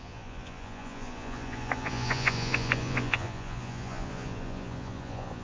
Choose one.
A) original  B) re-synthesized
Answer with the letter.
B